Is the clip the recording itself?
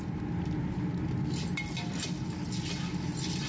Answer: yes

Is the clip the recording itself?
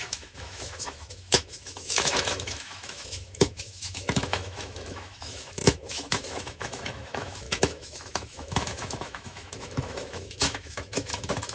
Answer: no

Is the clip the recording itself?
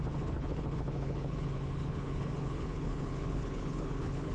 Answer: no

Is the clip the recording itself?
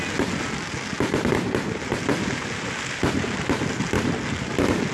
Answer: yes